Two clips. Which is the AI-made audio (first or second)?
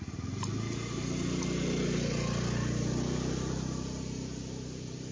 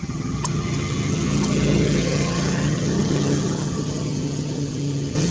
second